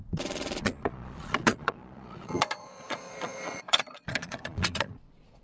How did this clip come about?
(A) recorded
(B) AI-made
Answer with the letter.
B